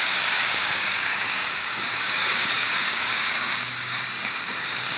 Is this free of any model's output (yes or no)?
no